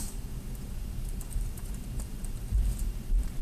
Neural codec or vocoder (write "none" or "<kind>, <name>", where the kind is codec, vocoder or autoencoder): vocoder, BigVGAN v2